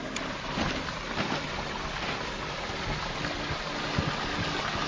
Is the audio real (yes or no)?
yes